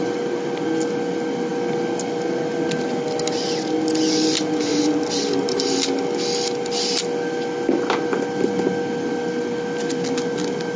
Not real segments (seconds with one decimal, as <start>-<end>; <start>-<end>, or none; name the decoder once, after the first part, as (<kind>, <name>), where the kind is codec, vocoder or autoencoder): none